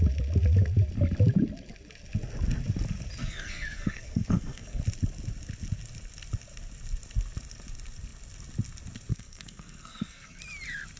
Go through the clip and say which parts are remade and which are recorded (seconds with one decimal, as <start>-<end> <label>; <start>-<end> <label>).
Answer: 0.0-3.2 recorded; 3.2-4.8 remade; 4.8-9.1 recorded; 9.1-10.4 remade; 10.4-11.0 recorded